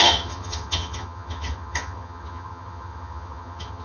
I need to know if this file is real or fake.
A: fake